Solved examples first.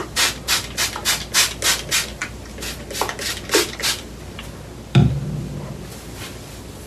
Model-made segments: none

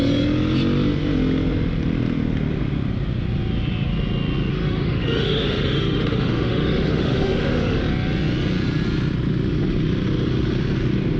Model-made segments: 4.5-7.8 (autoencoder, DAC-VAE)